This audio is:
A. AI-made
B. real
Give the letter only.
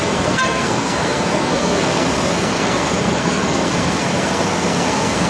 A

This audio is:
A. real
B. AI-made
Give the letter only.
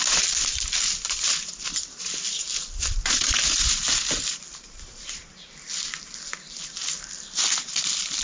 A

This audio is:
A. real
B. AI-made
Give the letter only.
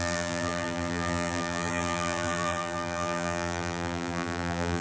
B